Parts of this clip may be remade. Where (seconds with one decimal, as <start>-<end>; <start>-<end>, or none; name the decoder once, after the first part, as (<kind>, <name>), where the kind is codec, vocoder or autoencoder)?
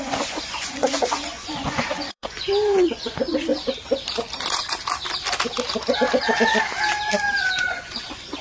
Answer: 0.0-3.5 (vocoder, Vocos); 7.5-8.4